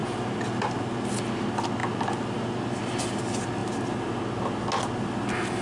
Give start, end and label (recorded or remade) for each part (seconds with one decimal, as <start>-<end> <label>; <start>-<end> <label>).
0.0-5.6 recorded